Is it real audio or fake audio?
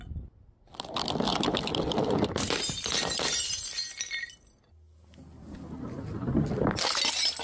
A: real